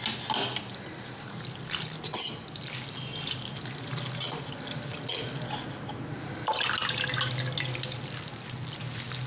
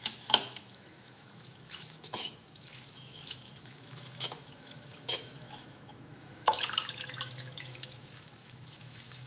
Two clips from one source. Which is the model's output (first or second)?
second